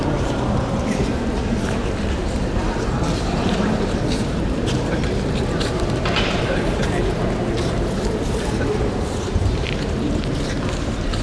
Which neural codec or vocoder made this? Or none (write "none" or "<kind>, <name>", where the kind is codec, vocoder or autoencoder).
vocoder, BigVGAN v2